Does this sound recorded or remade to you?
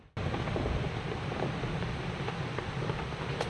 recorded